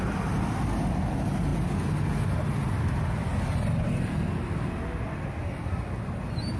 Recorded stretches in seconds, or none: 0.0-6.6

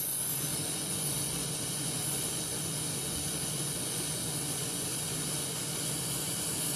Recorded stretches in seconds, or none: none

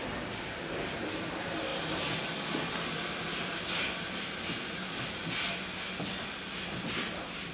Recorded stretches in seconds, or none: 0.0-7.5

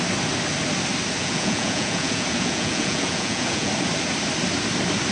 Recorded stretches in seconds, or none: 0.0-1.2; 3.7-5.1

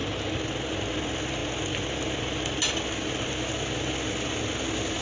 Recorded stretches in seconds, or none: 0.0-5.0

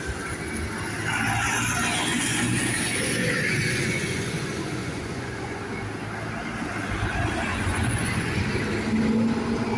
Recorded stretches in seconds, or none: 0.0-2.1; 5.6-7.5; 8.4-9.8

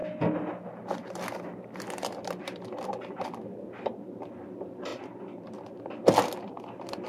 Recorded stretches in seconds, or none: 0.0-7.1